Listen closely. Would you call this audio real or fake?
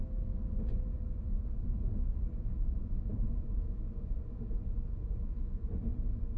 real